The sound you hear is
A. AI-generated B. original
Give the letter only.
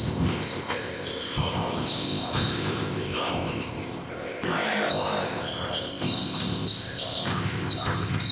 A